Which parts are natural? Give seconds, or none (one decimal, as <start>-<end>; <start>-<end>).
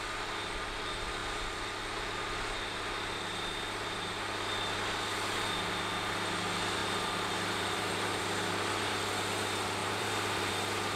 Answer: 0.0-6.8; 8.2-9.8; 10.5-11.0